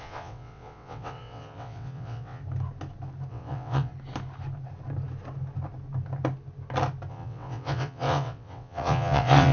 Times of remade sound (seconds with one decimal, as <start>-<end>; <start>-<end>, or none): 0.0-2.4; 3.3-3.9; 7.1-9.5

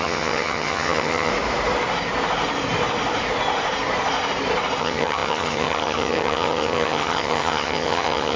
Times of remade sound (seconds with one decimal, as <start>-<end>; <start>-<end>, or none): 0.0-1.3; 4.8-8.4

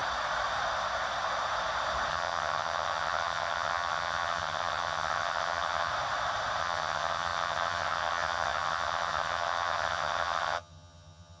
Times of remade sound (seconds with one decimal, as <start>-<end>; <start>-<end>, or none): 2.1-5.9; 6.6-11.4

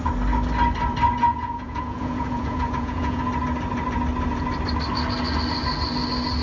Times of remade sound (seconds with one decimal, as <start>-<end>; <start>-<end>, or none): 1.3-3.2

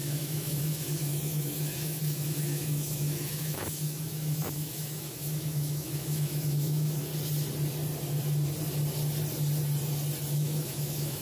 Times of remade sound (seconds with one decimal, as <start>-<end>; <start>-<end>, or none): 0.0-7.1; 10.3-11.2